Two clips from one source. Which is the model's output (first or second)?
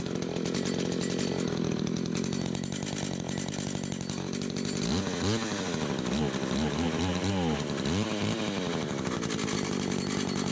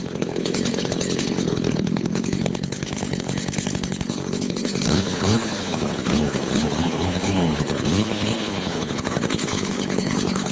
second